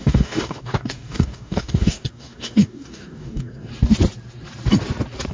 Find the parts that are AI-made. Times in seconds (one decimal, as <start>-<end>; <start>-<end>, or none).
0.0-3.7